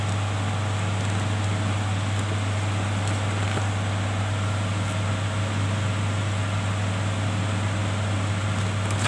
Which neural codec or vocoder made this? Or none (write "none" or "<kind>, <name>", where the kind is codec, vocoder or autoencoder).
none